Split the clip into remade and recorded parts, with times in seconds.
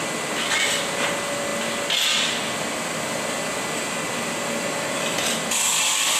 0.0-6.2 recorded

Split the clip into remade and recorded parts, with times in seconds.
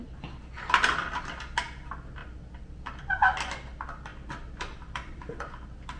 0.0-6.0 recorded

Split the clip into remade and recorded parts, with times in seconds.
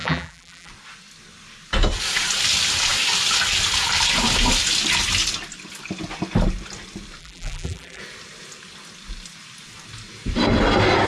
0.0-0.7 remade; 0.7-7.2 recorded; 7.2-8.0 remade; 8.0-11.1 recorded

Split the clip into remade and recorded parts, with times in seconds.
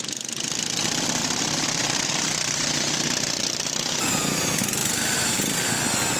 0.0-1.2 recorded; 1.2-3.9 remade; 3.9-4.8 recorded; 4.8-5.4 remade; 5.4-6.2 recorded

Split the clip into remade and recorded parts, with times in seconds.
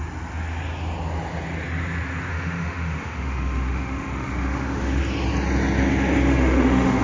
0.0-2.3 recorded; 2.3-5.0 remade; 5.0-6.3 recorded; 6.3-7.0 remade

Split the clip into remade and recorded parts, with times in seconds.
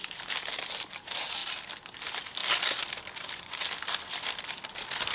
0.0-1.4 remade; 1.4-1.9 recorded; 1.9-2.4 remade; 2.4-5.1 recorded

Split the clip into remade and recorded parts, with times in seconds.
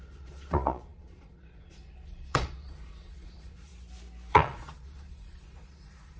0.0-3.7 remade; 3.7-4.3 recorded; 4.3-6.2 remade